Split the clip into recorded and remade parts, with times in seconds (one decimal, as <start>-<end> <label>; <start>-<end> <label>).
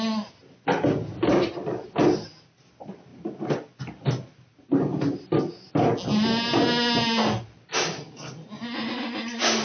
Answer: 0.0-9.6 recorded